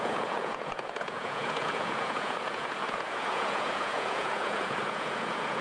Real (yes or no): no